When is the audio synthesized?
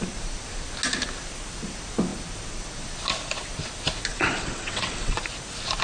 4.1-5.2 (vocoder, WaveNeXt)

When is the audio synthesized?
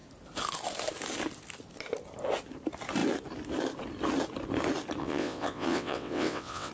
5.0-6.7 (vocoder, WaveNeXt)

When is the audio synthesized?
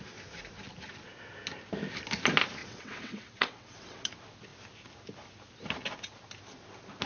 2.6-4.1 (vocoder, WaveNeXt)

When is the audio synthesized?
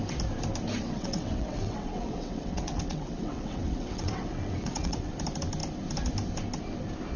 0.8-5.1 (vocoder, WaveNeXt)